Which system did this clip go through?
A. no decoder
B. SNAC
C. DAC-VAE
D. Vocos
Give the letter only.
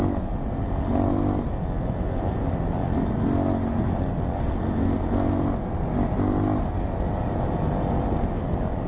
A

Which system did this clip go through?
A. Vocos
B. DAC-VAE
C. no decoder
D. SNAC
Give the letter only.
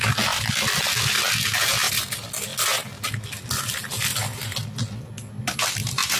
C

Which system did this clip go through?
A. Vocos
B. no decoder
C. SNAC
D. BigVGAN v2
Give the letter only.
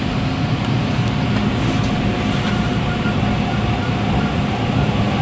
B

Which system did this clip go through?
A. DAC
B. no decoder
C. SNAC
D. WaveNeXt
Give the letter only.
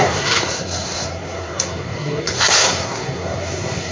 C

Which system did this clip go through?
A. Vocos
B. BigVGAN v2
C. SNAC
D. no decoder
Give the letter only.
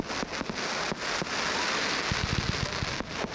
D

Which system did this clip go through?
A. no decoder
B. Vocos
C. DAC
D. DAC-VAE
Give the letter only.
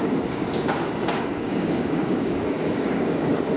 C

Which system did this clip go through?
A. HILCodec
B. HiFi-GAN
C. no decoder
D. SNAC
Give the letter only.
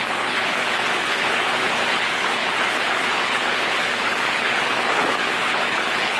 A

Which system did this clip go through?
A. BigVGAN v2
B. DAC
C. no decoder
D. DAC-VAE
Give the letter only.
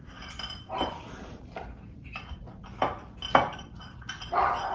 A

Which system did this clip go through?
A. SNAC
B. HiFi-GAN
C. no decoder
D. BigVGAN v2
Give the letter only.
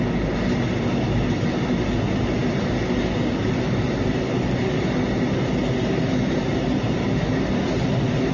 C